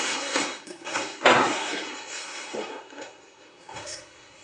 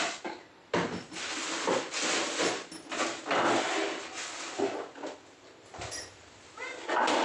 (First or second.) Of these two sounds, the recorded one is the second